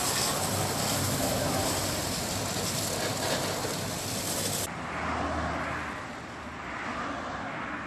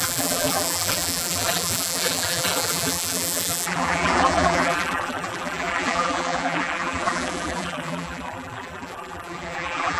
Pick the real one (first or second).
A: first